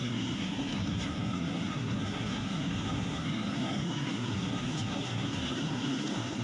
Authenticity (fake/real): fake